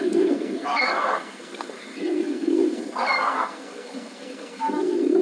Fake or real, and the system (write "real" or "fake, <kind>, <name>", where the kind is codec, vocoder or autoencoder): fake, codec, SNAC